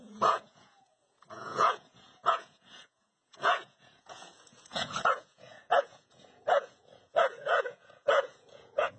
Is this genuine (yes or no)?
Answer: no